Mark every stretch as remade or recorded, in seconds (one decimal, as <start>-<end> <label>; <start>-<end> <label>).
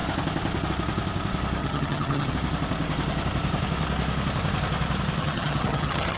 0.0-1.6 recorded; 1.6-2.3 remade; 2.3-5.2 recorded; 5.2-6.2 remade